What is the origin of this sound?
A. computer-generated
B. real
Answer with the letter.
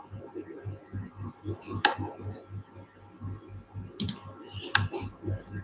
B